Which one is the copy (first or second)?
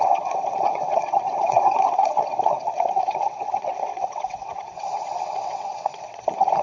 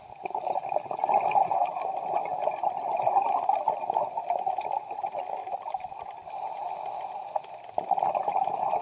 first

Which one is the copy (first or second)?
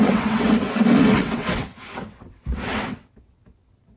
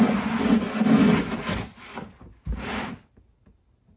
first